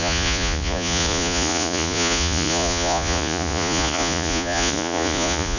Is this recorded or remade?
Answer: remade